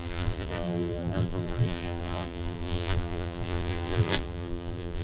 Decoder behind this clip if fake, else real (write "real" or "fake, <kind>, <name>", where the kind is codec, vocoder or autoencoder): fake, vocoder, BigVGAN v2